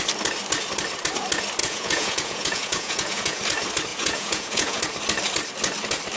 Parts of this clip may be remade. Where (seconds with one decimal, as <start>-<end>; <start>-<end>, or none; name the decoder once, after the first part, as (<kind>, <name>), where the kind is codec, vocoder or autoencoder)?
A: 1.6-3.4 (vocoder, Vocos); 3.9-4.8

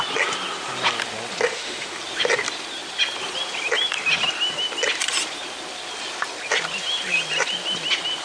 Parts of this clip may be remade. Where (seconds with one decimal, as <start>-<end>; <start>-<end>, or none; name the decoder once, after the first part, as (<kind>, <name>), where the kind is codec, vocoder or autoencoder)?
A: 1.5-2.0 (autoencoder, DAC-VAE)

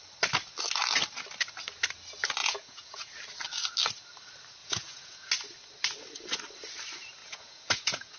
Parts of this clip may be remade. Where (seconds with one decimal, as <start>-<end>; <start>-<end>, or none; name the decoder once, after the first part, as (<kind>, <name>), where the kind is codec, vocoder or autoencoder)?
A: 2.4-3.1 (vocoder, Vocos); 4.6-5.3; 7.2-8.2